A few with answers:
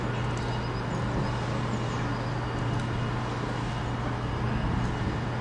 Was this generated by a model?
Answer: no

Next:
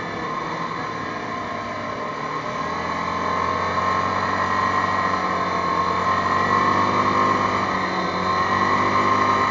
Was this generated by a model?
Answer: no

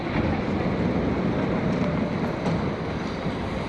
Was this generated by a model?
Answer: no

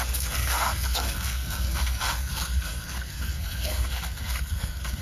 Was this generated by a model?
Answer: yes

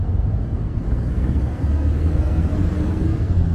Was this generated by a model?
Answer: yes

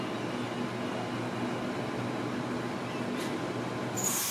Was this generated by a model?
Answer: no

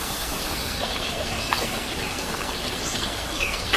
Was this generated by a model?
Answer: yes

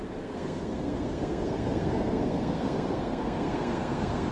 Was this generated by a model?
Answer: yes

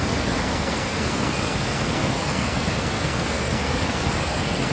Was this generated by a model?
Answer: yes